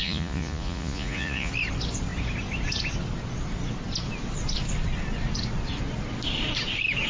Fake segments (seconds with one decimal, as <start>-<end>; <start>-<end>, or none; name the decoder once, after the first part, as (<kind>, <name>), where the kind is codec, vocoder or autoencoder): 0.0-1.5 (vocoder, Vocos)